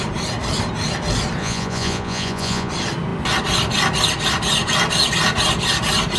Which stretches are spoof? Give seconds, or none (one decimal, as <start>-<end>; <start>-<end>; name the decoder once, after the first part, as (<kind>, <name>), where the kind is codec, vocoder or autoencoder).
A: 1.4-2.7 (vocoder, Vocos)